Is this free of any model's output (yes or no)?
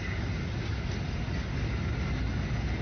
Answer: yes